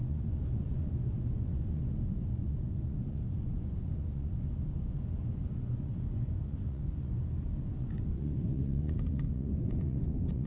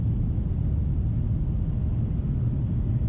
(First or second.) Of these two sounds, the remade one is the first